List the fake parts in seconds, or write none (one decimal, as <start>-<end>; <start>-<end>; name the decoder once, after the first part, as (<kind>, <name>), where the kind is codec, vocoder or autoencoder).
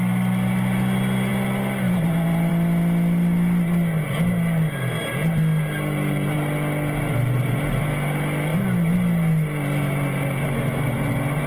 none